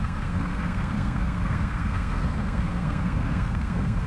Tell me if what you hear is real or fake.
fake